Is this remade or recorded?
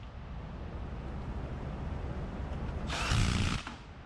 remade